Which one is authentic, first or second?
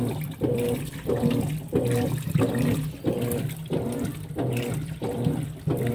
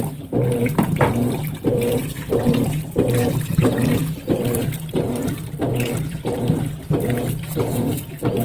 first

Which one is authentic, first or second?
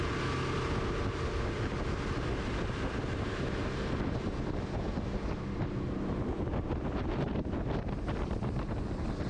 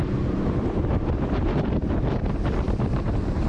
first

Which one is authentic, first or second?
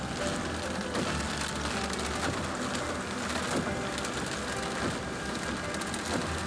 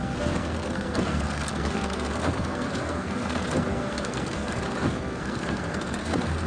first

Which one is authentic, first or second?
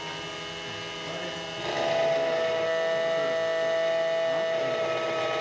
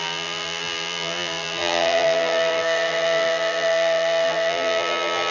first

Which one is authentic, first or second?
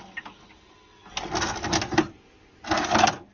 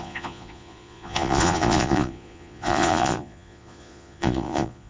first